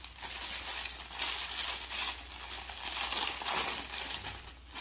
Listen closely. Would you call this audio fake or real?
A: real